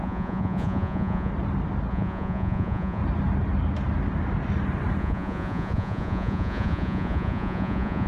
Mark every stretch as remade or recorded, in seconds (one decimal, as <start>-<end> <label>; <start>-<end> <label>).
0.0-1.3 remade; 1.3-1.9 recorded; 1.9-3.0 remade; 3.0-5.0 recorded; 5.0-8.1 remade